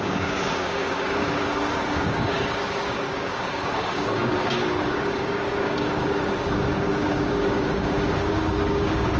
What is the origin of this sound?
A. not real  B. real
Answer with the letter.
A